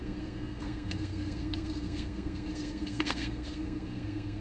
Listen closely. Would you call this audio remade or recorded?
remade